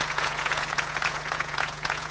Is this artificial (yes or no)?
yes